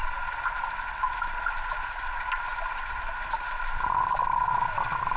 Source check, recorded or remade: recorded